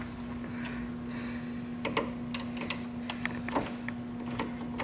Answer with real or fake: real